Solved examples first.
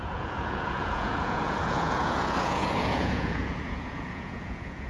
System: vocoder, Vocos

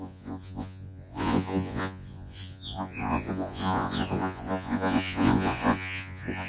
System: vocoder, Vocos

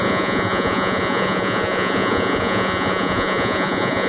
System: vocoder, Vocos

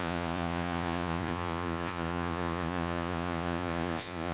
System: vocoder, Vocos